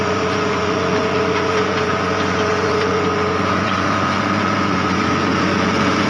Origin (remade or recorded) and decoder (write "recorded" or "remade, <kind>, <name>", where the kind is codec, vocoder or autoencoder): remade, vocoder, Vocos